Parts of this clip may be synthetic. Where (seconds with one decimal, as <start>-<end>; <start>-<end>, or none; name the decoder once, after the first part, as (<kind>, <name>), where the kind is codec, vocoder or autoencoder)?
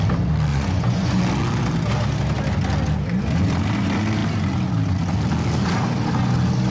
0.5-1.2 (vocoder, Vocos)